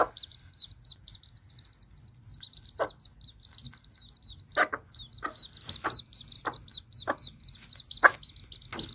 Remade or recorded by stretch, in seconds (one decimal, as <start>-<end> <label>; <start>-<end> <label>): 0.0-8.9 recorded